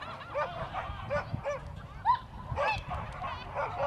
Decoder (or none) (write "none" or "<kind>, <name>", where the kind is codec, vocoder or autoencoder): none